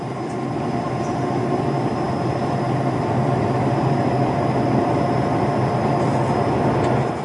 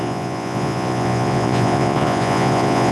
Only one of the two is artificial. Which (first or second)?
second